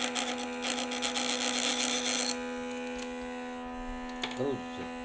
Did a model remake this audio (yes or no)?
no